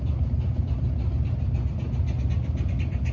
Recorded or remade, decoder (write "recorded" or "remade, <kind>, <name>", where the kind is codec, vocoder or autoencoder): recorded